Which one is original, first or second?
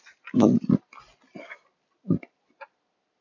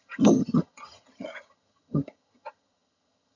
first